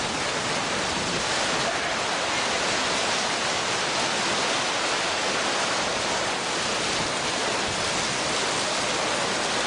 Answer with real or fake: real